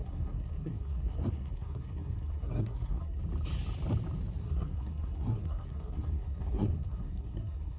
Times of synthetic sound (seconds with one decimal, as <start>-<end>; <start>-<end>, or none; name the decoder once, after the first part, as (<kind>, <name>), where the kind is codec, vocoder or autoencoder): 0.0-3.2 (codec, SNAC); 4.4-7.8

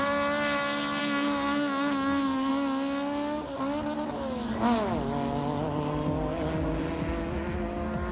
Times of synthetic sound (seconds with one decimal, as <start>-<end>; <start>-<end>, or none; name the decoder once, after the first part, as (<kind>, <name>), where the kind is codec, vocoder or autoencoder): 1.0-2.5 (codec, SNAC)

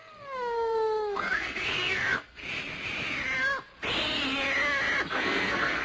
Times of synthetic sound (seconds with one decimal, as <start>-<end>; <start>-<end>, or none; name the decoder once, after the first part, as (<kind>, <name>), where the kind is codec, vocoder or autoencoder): 0.0-2.4 (codec, SNAC); 5.1-5.8

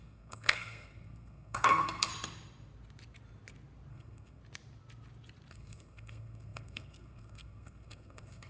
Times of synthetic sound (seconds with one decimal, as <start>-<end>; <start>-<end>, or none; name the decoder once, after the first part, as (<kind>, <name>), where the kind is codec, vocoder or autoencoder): 0.0-2.1 (codec, SNAC); 3.9-4.4; 5.5-8.5

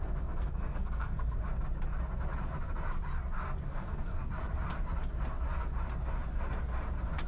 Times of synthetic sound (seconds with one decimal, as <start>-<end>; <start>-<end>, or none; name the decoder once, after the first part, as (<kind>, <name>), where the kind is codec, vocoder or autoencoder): 0.0-1.4 (codec, SNAC); 3.6-4.2

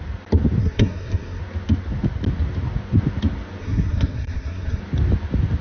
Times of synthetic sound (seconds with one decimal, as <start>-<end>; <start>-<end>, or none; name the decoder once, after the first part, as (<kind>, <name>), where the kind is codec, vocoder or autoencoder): 0.6-1.4 (codec, SNAC); 3.6-4.8

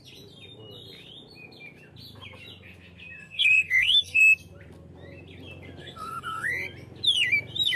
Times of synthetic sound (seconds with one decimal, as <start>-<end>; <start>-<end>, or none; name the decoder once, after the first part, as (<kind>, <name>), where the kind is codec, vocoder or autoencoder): 3.2-4.2 (codec, SNAC); 5.8-6.5